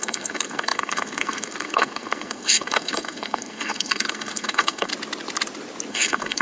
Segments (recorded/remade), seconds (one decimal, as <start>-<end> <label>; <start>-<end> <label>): 0.0-4.9 remade; 4.9-5.9 recorded; 5.9-6.4 remade

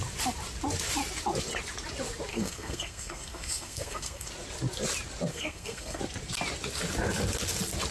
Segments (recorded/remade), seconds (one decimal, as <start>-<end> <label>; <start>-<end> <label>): 0.0-2.3 recorded; 2.3-4.3 remade; 4.3-5.3 recorded; 5.3-6.0 remade; 6.0-7.9 recorded

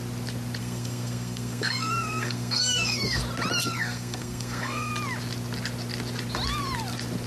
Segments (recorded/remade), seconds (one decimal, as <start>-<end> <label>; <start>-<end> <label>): 0.0-0.6 recorded; 0.6-3.2 remade; 3.2-3.6 recorded; 3.6-4.9 remade; 4.9-7.3 recorded

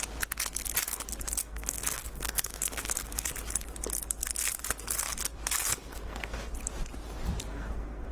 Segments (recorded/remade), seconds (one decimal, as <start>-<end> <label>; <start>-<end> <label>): 0.0-1.4 recorded; 1.4-3.3 remade; 3.3-5.7 recorded; 5.7-6.5 remade; 6.5-7.5 recorded; 7.5-8.1 remade

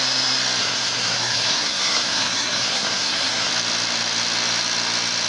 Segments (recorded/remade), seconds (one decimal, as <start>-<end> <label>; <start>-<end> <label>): 0.0-0.6 recorded; 0.6-3.5 remade; 3.5-5.3 recorded